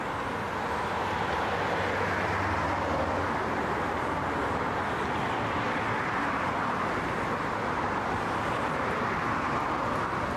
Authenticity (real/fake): real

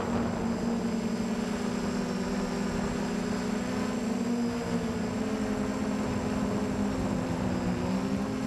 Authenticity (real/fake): real